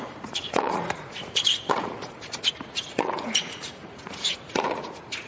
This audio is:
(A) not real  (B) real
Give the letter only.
A